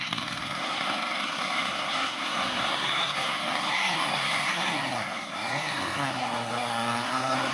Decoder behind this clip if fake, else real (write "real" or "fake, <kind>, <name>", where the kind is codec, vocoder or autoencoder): fake, codec, SNAC